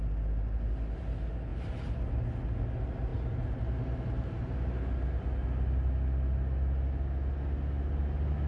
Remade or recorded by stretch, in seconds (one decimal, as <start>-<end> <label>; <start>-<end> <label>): 0.0-8.5 recorded